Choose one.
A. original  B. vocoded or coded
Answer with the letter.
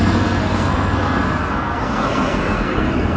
B